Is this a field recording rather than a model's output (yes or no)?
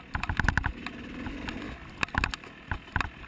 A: yes